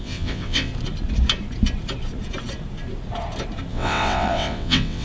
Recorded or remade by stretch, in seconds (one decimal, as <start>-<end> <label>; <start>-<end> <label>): 0.0-0.7 remade; 0.7-3.7 recorded; 3.7-5.0 remade